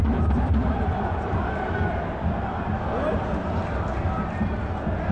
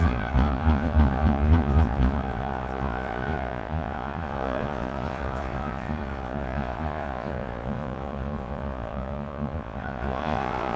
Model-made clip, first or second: second